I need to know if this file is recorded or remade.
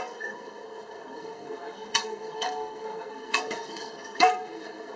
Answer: remade